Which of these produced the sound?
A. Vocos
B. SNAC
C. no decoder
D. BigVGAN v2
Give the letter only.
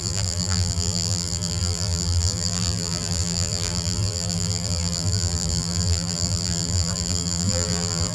D